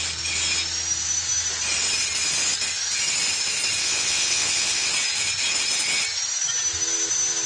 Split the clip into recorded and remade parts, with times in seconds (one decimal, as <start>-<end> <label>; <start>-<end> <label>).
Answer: 0.0-3.8 recorded; 3.8-4.9 remade; 4.9-7.5 recorded